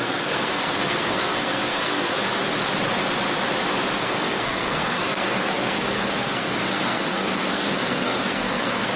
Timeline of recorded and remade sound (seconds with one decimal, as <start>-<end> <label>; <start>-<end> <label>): 0.0-2.1 remade; 2.1-4.0 recorded; 4.0-9.0 remade